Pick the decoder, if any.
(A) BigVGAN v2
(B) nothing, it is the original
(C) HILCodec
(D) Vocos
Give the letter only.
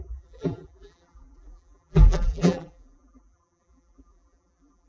A